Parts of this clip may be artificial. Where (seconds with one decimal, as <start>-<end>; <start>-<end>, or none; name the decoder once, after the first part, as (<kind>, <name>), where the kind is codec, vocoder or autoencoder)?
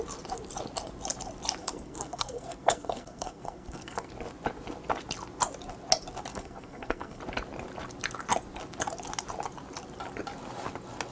1.6-4.1 (codec, SNAC); 6.3-7.2